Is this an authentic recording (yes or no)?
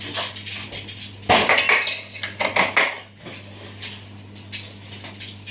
yes